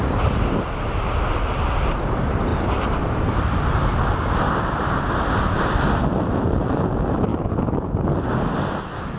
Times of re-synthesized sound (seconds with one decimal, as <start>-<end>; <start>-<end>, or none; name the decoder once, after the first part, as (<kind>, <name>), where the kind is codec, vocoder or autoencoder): 7.3-8.0 (autoencoder, DAC-VAE)

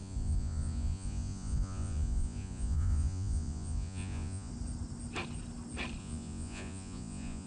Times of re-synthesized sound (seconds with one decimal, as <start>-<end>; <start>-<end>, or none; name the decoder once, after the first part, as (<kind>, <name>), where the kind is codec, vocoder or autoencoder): 0.0-4.5 (vocoder, Vocos); 6.0-7.5